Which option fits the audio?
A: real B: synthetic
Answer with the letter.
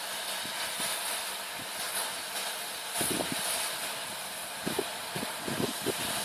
A